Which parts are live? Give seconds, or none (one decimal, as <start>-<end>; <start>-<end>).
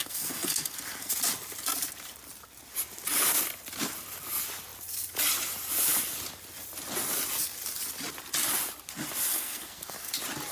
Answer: 1.1-9.3; 10.1-10.5